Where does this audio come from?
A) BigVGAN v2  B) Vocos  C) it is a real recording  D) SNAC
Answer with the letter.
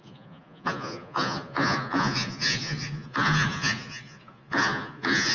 B